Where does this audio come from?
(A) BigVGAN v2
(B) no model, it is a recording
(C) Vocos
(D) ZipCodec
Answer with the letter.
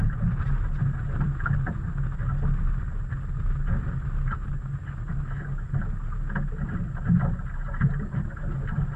B